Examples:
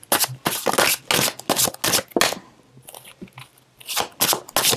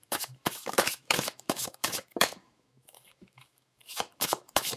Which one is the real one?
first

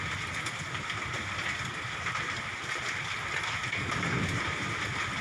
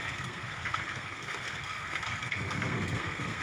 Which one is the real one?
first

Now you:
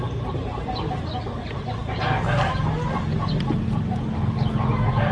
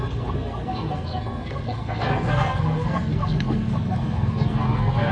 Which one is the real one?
first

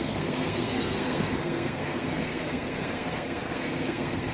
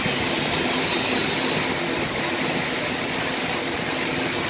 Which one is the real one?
second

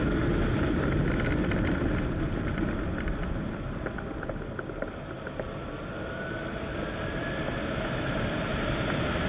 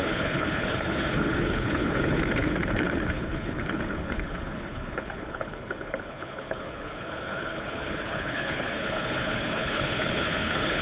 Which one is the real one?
first